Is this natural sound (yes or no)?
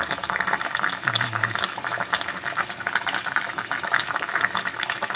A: no